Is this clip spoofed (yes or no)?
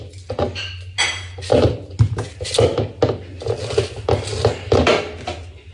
no